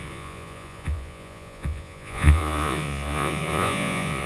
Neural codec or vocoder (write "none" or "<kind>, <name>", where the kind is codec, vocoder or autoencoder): vocoder, Vocos